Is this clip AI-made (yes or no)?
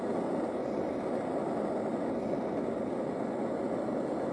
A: no